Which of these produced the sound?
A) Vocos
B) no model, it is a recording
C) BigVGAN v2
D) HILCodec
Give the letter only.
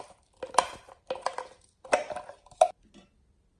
B